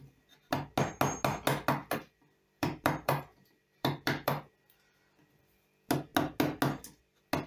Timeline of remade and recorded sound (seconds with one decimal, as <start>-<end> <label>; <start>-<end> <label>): 0.0-1.8 recorded; 1.8-4.4 remade; 4.4-7.5 recorded